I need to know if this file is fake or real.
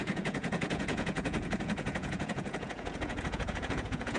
fake